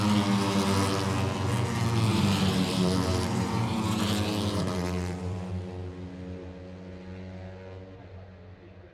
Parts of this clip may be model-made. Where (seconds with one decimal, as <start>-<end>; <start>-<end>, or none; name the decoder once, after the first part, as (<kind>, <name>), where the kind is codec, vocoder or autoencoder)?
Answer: 2.1-5.5 (vocoder, BigVGAN v2)